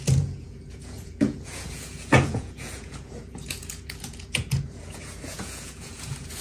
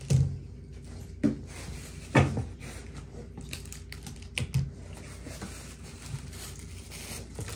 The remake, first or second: first